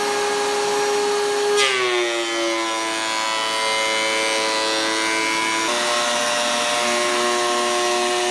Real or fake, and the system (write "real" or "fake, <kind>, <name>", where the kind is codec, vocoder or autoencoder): real